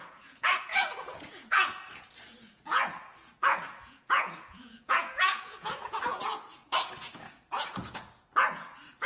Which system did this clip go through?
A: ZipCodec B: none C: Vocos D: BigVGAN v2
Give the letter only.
C